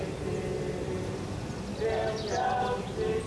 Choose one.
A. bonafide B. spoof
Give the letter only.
A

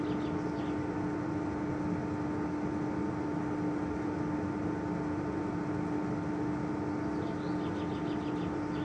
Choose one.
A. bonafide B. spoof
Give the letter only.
A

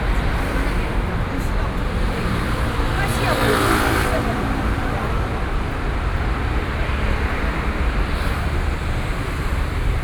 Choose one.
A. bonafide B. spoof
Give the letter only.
B